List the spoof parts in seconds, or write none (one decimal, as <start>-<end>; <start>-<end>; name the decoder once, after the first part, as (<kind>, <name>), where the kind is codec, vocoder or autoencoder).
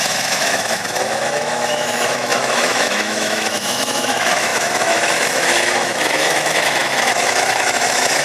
0.0-8.2 (autoencoder, DAC-VAE)